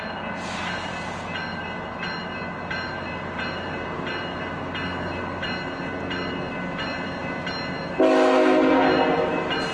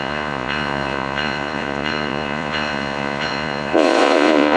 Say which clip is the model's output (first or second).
second